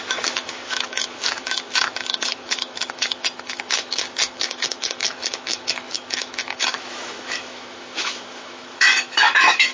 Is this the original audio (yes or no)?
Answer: no